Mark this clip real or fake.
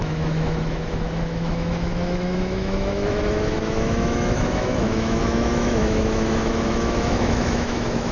fake